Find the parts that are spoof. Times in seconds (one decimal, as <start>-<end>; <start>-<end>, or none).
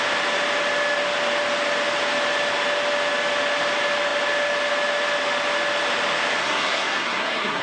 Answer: 6.4-7.6